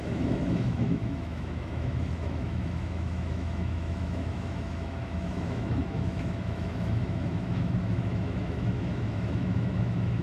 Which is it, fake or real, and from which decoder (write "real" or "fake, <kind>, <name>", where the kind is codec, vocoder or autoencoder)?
fake, autoencoder, DAC-VAE